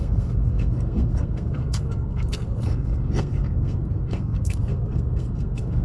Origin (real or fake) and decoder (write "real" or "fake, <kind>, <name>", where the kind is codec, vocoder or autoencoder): fake, codec, SNAC